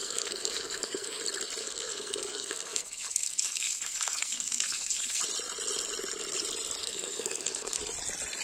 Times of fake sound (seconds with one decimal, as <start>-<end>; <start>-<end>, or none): 0.0-1.2; 1.6-5.2; 6.8-7.8